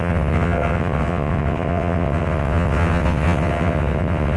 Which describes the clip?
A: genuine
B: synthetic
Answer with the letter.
B